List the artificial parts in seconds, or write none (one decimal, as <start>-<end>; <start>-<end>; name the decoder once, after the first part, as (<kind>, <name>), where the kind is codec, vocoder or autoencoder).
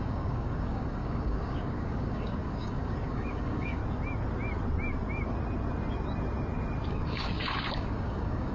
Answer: 0.0-3.8 (codec, DAC); 6.9-8.5